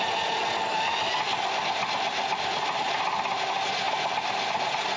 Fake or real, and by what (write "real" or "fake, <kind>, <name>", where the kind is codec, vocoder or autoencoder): real